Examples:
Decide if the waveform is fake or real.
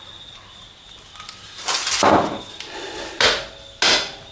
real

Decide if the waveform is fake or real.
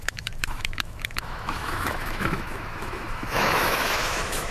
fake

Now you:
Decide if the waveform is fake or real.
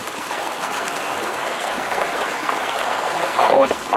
fake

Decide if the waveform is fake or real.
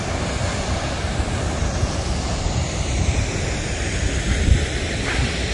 fake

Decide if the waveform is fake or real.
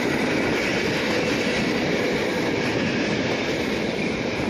real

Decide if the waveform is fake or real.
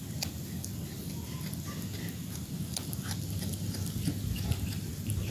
real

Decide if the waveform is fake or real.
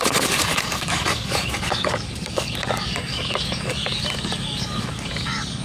fake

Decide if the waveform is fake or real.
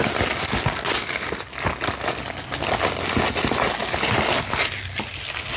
real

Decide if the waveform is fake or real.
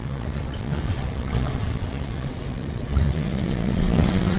fake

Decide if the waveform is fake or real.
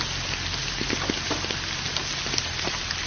real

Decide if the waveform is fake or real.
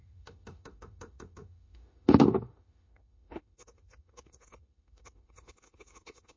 fake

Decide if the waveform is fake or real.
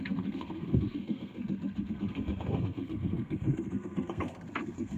fake